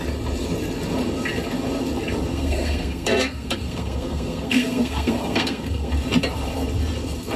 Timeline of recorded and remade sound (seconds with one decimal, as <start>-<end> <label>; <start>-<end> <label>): 0.0-2.3 recorded; 2.3-5.9 remade; 5.9-7.4 recorded